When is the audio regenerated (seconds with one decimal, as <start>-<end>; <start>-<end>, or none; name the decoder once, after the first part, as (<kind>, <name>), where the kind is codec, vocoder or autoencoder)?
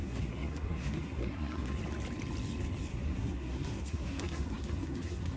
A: 0.0-1.8 (codec, SNAC); 2.9-5.4